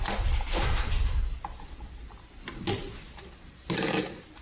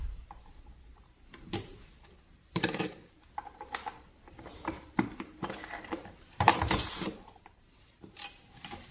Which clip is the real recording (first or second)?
first